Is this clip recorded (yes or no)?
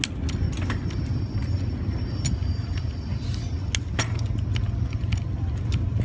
yes